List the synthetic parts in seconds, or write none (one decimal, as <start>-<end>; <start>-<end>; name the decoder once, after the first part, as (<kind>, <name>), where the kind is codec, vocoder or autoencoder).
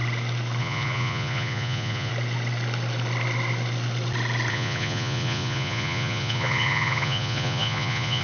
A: 0.6-2.1 (vocoder, Vocos); 4.5-8.2